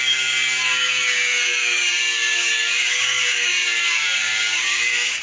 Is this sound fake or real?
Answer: fake